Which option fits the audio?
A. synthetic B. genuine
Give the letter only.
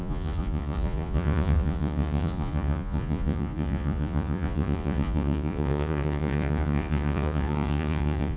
A